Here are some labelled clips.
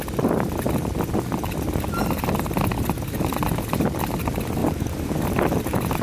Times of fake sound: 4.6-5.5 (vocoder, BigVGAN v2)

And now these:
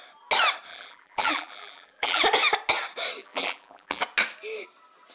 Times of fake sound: 0.7-2.2 (vocoder, BigVGAN v2); 3.2-4.0

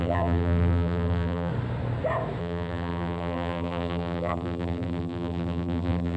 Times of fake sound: 0.0-1.5 (vocoder, BigVGAN v2); 2.4-6.2